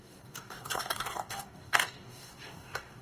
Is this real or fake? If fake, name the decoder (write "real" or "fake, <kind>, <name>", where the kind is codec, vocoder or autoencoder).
fake, codec, DAC